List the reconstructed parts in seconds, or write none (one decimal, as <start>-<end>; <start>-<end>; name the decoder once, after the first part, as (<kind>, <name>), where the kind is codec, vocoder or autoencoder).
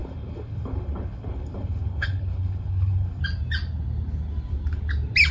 0.0-3.2 (codec, HILCodec)